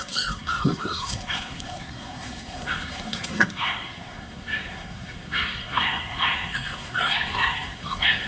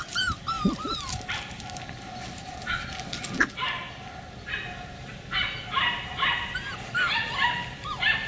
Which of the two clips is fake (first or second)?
first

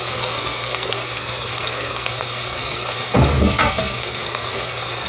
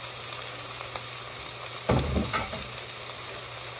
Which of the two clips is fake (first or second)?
first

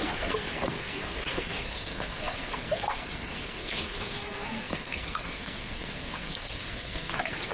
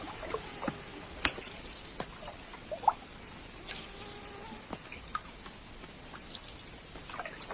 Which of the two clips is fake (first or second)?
first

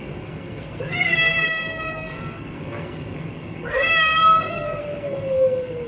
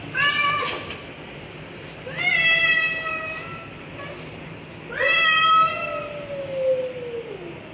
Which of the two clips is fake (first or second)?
first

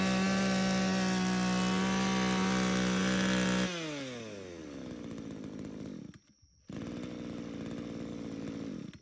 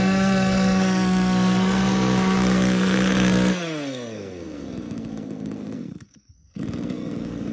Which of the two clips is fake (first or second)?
second